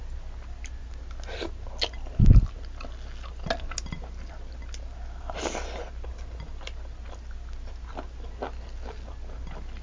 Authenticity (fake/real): real